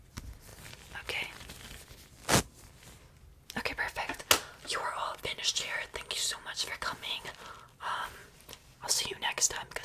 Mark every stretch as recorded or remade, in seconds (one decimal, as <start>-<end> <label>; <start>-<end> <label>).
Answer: 0.0-6.7 recorded; 6.7-7.2 remade; 7.2-8.2 recorded; 8.2-9.2 remade; 9.2-9.8 recorded